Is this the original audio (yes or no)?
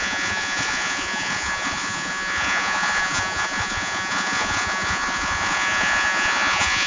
no